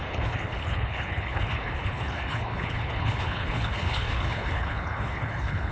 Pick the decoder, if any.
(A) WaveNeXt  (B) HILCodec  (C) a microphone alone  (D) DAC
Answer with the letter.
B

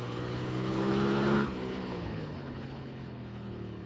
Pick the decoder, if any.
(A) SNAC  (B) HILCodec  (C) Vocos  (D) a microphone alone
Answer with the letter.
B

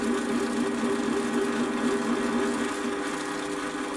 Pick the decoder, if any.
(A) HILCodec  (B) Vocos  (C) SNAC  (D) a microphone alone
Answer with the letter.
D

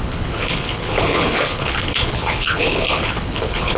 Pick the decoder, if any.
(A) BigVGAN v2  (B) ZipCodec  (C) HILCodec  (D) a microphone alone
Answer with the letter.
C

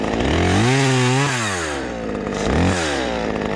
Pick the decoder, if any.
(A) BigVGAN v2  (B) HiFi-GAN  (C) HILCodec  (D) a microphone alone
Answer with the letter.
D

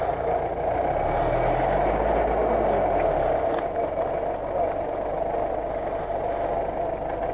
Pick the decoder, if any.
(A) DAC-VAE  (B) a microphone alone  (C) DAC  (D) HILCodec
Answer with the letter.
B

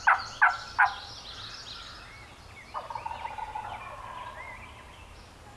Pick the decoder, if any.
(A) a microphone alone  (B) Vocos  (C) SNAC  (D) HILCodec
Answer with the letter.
A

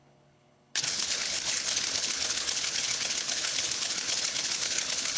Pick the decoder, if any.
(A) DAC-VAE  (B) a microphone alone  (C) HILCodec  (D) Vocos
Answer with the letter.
C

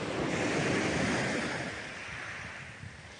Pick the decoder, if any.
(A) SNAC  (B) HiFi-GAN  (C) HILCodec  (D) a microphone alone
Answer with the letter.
D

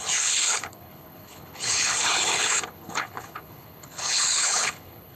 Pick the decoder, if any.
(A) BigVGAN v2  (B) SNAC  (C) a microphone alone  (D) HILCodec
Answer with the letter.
D